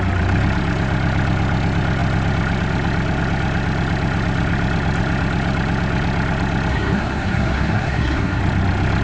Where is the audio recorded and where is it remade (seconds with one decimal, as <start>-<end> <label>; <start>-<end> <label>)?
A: 0.0-6.7 recorded; 6.7-8.4 remade; 8.4-9.0 recorded